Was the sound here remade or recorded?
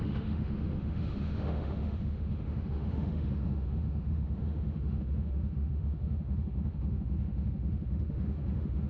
remade